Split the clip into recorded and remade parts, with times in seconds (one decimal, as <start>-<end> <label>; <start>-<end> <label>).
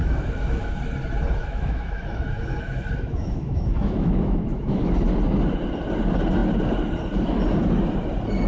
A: 0.0-0.8 remade; 0.8-1.4 recorded; 1.4-4.9 remade; 4.9-8.5 recorded